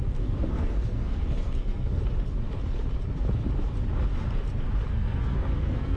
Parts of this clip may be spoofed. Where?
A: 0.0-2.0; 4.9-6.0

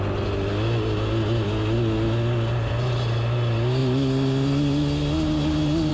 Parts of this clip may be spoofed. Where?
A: none

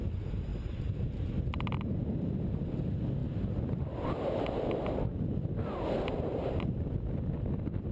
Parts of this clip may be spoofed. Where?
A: none

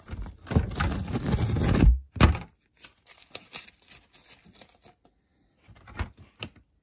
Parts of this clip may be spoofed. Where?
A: none

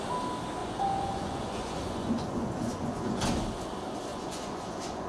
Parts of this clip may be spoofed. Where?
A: 0.6-3.2; 4.1-5.1

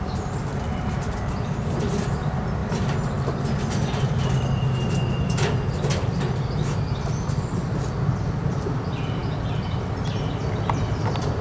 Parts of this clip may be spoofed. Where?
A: none